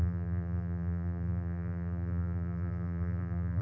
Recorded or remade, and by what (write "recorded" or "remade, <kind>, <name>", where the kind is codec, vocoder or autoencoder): remade, vocoder, BigVGAN v2